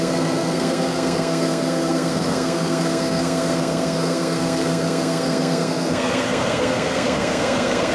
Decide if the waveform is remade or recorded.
remade